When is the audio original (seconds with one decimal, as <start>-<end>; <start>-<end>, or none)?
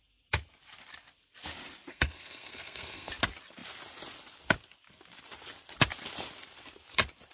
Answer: 0.0-1.9; 3.1-7.3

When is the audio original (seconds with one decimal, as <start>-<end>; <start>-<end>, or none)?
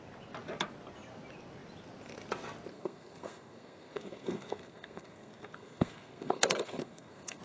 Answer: 0.0-2.7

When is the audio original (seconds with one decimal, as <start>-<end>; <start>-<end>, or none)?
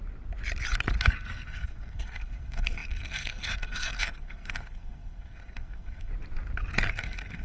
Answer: 0.0-1.0; 6.1-6.9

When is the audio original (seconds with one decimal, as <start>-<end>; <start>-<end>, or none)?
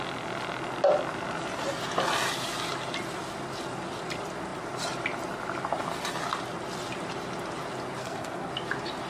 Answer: 0.0-8.0; 8.5-9.1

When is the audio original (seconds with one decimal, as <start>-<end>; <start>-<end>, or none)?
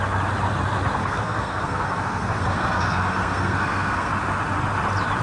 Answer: 0.0-1.0; 4.1-5.2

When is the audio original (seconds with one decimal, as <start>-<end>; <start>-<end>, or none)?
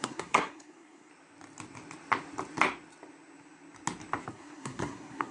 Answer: 1.1-4.3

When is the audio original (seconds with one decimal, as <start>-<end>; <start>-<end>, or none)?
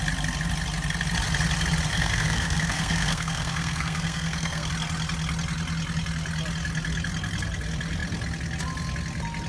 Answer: 0.0-1.9; 4.7-9.5